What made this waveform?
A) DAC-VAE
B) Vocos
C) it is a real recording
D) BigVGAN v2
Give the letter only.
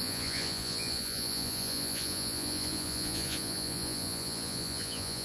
B